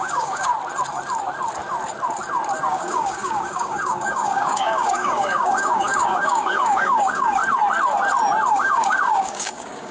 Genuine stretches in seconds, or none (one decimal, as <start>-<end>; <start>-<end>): 0.5-2.7; 7.4-8.5